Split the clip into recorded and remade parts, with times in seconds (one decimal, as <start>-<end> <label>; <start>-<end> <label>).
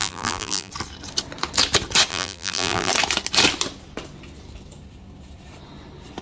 0.0-0.7 remade; 0.7-2.1 recorded; 2.1-2.9 remade; 2.9-6.2 recorded